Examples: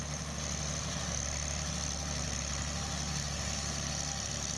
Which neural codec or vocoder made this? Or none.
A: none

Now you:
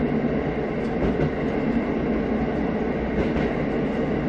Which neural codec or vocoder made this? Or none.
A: none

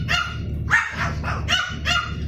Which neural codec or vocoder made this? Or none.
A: none